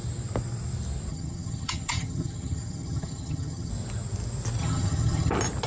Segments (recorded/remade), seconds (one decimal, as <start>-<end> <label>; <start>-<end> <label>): 0.0-1.1 recorded; 1.1-3.7 remade; 3.7-4.6 recorded; 4.6-5.3 remade; 5.3-5.7 recorded